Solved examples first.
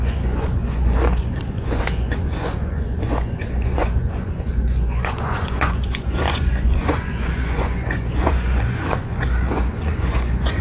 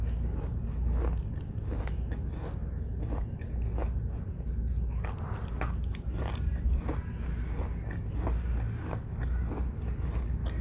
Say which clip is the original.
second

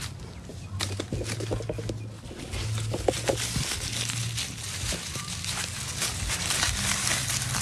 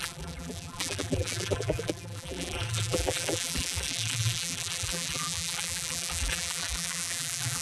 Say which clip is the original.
first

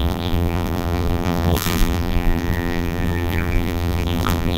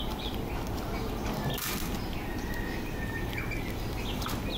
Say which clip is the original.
second